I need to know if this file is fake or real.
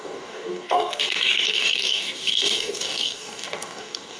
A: fake